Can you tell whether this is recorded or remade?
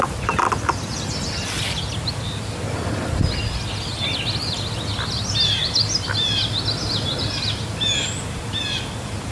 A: recorded